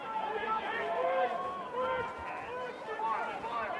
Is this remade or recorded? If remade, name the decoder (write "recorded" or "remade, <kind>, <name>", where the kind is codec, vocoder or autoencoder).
recorded